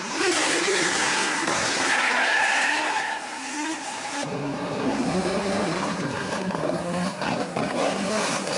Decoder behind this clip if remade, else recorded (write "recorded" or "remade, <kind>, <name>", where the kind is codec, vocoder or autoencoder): remade, codec, SNAC